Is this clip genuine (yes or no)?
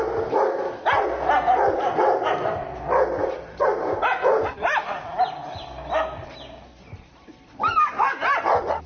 yes